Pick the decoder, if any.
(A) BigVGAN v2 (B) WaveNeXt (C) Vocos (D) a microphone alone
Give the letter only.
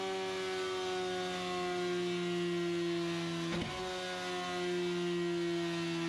D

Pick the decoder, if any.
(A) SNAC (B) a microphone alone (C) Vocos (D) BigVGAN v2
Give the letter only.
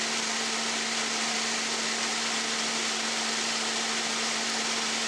D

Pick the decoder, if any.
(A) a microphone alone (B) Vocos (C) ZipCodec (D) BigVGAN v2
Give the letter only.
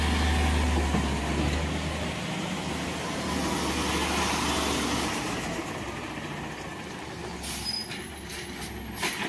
A